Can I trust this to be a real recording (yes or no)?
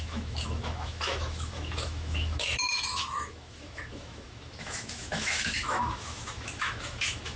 no